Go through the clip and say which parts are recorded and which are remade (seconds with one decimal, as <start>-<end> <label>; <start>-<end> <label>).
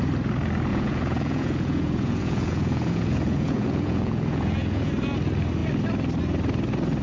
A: 0.0-0.7 recorded; 0.7-4.9 remade; 4.9-7.0 recorded